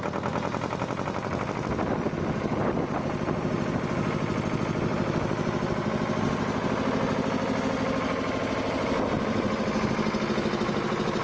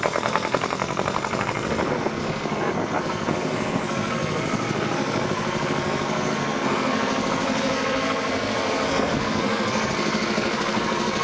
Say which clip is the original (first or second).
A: first